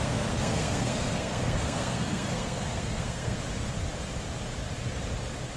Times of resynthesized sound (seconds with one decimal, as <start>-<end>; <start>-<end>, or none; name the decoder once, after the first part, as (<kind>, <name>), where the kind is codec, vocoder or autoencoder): 0.0-3.4 (codec, SNAC)